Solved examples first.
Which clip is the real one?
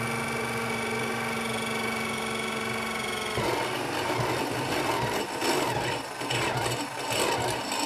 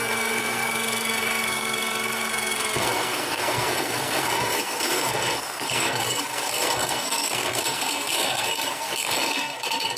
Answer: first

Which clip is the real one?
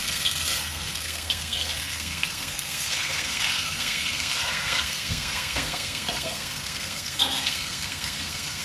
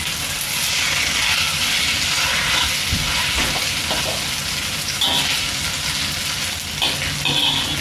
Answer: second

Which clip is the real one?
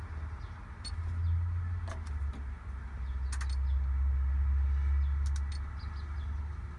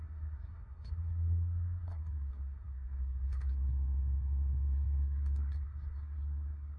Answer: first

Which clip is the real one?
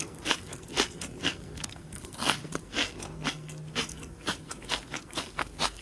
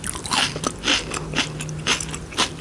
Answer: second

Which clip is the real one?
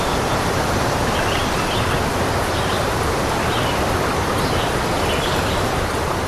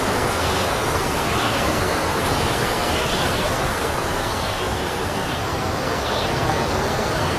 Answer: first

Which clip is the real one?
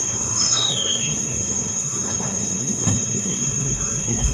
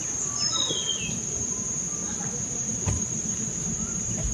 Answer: second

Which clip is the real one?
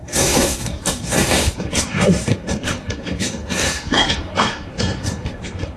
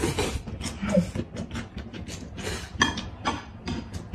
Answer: second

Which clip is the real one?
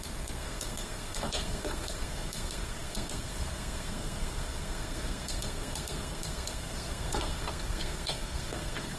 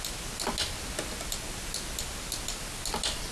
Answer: second